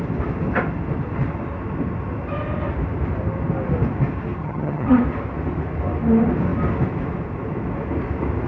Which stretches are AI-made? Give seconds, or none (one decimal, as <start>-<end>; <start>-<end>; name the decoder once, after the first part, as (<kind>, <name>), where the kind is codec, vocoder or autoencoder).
4.4-5.0 (vocoder, HiFi-GAN)